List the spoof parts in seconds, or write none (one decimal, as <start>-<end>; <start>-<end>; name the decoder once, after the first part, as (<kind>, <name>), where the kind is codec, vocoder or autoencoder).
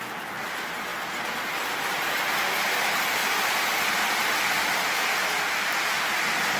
none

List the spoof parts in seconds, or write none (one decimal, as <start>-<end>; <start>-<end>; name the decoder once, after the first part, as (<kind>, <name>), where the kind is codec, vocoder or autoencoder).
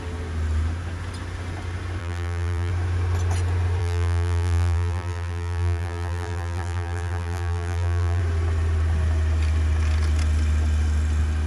2.0-2.7 (vocoder, BigVGAN v2); 3.8-8.2